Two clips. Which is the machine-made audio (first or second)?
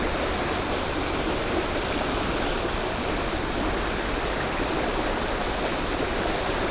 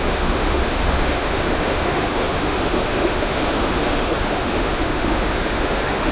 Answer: second